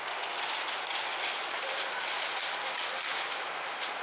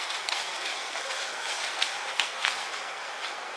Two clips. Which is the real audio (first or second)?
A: first